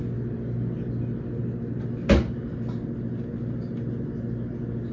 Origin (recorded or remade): recorded